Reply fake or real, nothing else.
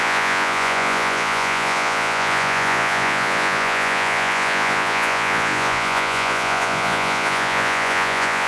fake